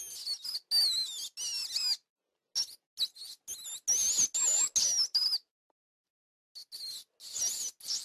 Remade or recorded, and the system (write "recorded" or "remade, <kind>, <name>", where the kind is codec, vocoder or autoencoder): recorded